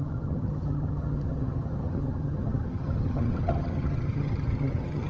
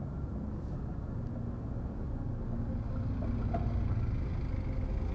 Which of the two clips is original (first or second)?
second